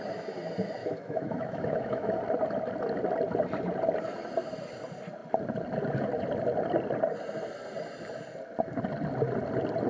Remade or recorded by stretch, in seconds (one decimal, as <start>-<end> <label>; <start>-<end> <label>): 0.0-0.8 recorded; 0.8-2.2 remade; 2.2-9.9 recorded